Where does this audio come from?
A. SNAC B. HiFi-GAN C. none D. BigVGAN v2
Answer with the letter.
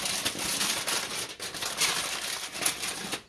C